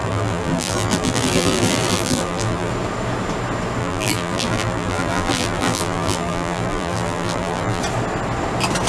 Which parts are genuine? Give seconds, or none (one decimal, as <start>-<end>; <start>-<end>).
2.7-3.8; 7.8-8.9